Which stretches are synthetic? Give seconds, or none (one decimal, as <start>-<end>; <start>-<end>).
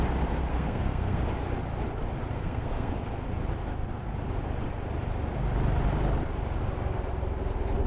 0.5-1.2; 2.3-2.9